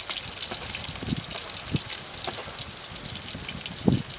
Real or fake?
real